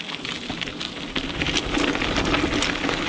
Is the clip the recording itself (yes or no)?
yes